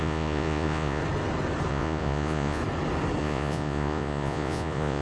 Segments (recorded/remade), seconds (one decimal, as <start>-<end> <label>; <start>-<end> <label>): 0.0-1.0 remade; 1.0-1.7 recorded; 1.7-2.6 remade; 2.6-3.2 recorded; 3.2-5.0 remade